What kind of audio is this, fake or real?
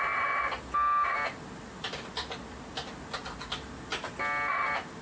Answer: real